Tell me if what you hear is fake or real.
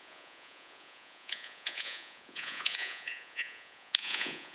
fake